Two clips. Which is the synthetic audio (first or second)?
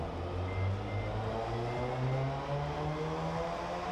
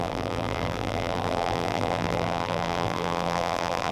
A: second